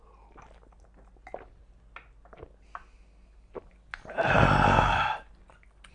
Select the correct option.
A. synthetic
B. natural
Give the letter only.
B